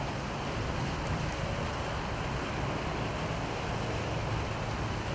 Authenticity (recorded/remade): recorded